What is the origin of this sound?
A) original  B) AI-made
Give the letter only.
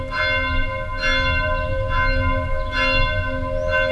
A